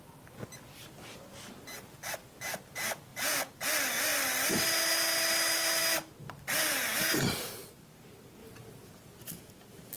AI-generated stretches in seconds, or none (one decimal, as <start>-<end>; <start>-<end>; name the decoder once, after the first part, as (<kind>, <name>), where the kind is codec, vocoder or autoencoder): 3.1-3.6 (vocoder, Vocos)